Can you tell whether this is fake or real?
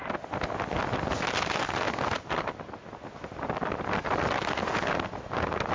real